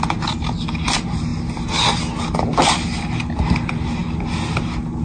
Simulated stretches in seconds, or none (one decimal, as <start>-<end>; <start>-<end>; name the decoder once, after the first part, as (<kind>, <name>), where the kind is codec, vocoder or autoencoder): none